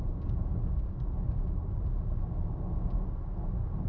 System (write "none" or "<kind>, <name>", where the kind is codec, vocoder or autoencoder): none